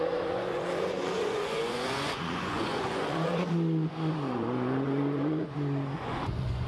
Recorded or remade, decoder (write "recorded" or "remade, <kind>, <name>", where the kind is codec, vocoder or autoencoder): remade, vocoder, Vocos